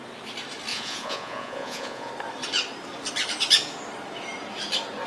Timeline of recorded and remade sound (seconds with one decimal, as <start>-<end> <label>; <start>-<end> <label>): 0.0-0.7 recorded; 0.7-2.1 remade; 2.1-5.1 recorded